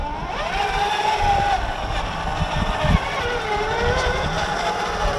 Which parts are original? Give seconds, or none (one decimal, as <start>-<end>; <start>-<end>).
0.0-5.2